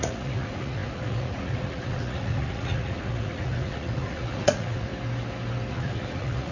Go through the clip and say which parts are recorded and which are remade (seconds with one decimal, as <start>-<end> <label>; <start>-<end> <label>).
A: 0.0-4.9 remade; 4.9-5.7 recorded; 5.7-6.5 remade